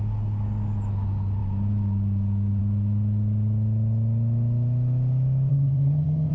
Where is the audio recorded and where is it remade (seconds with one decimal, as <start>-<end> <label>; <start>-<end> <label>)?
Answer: 0.0-5.5 recorded; 5.5-6.3 remade